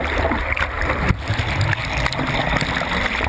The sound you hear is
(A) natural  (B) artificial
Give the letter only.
A